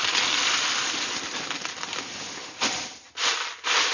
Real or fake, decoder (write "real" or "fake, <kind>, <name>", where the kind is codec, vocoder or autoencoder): real